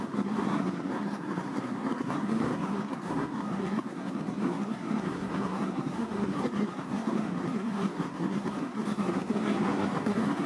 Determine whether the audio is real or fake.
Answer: fake